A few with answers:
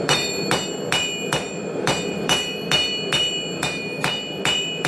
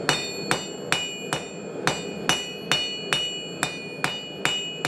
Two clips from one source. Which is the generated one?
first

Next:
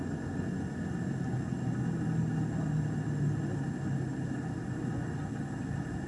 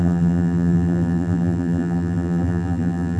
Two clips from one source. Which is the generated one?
second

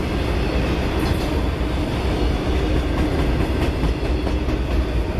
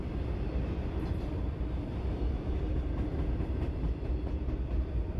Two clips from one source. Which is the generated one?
second